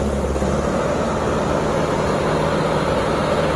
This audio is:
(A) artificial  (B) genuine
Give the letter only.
B